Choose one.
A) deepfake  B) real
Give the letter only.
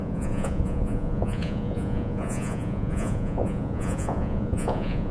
A